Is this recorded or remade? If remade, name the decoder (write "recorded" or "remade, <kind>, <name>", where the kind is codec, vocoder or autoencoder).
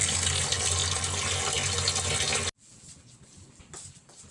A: recorded